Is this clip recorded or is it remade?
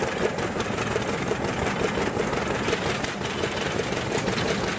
recorded